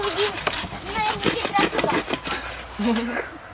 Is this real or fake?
real